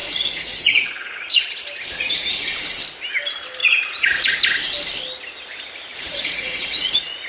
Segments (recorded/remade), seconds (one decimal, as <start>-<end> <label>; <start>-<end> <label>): 0.0-1.4 remade; 1.4-3.6 recorded; 3.6-4.3 remade; 4.3-5.9 recorded; 5.9-7.3 remade